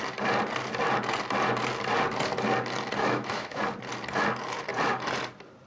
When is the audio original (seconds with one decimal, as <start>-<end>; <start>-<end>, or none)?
0.0-3.0; 3.6-5.7